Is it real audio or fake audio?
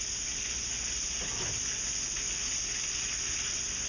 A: real